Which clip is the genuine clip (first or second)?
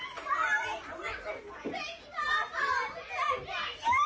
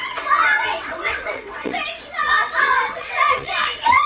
first